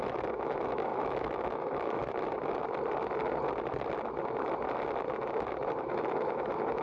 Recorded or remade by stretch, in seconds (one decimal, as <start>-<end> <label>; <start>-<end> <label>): 0.0-2.0 remade; 2.0-5.8 recorded; 5.8-6.8 remade